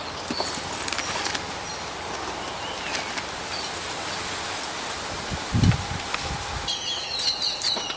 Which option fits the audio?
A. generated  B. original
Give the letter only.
B